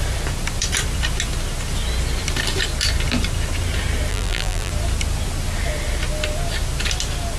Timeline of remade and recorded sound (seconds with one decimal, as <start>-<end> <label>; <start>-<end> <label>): 0.0-4.1 recorded; 4.1-4.7 remade; 4.7-7.4 recorded